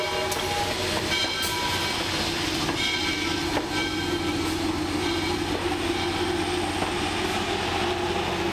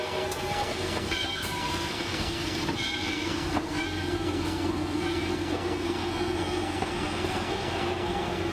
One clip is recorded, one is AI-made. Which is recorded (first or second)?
first